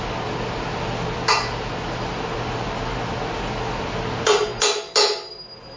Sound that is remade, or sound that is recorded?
recorded